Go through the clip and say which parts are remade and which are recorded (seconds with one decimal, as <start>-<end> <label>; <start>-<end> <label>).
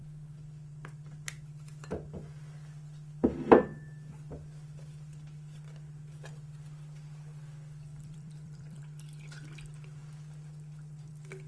0.0-7.9 recorded; 7.9-8.8 remade; 8.8-11.5 recorded